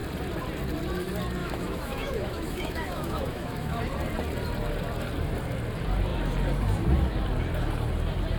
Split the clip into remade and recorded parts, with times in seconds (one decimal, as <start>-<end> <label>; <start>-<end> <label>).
0.0-1.4 recorded; 1.4-3.8 remade; 3.8-8.4 recorded

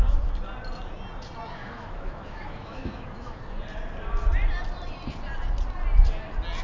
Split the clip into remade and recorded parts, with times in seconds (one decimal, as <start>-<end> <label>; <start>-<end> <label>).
0.0-1.6 recorded; 1.6-3.4 remade; 3.4-6.6 recorded

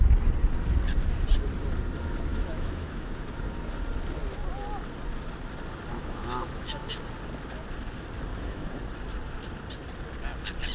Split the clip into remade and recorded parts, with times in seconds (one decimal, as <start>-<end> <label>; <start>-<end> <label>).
0.0-2.3 recorded; 2.3-3.1 remade; 3.1-5.9 recorded; 5.9-6.9 remade; 6.9-8.3 recorded; 8.3-8.8 remade; 8.8-10.7 recorded

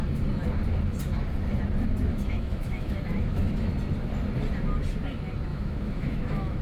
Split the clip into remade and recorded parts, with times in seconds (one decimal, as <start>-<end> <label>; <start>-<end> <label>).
0.0-2.1 recorded; 2.1-3.7 remade; 3.7-5.5 recorded; 5.5-6.6 remade

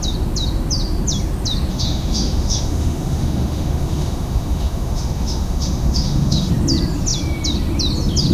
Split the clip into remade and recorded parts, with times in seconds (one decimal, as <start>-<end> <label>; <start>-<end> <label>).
0.0-1.7 recorded; 1.7-6.5 remade; 6.5-8.3 recorded

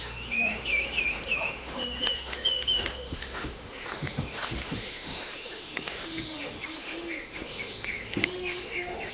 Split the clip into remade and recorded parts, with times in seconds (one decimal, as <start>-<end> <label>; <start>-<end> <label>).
0.0-9.1 remade